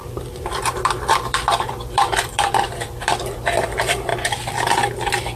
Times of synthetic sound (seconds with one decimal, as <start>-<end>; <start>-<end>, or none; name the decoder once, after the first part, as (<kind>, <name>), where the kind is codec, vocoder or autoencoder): 0.0-4.1 (vocoder, BigVGAN v2)